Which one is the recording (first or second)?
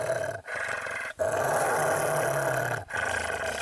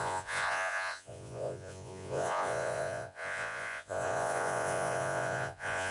first